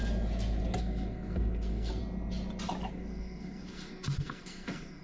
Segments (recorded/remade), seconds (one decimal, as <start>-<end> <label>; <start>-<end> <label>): 0.0-0.8 recorded; 0.8-2.0 remade; 2.0-2.9 recorded; 2.9-5.0 remade